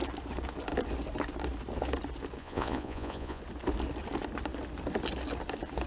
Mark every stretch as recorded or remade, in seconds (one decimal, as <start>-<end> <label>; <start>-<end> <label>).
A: 0.0-2.4 recorded; 2.4-3.4 remade; 3.4-5.9 recorded